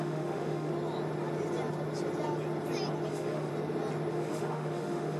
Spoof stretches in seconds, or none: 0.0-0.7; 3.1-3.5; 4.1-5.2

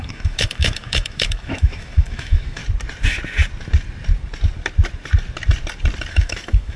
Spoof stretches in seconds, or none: 0.0-2.6; 6.1-6.8

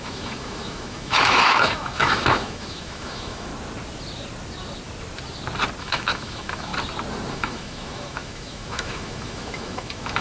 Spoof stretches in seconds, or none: 0.0-3.5; 5.8-6.7; 7.3-10.2

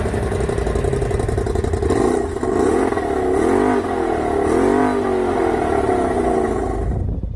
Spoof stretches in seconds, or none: none

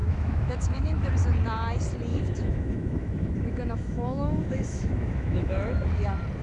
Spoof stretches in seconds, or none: 0.0-1.1; 2.1-5.9

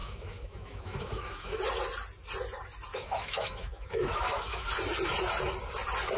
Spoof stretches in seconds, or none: 0.0-1.6; 2.9-4.7